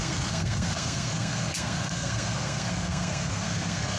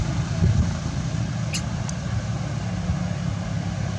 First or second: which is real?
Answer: second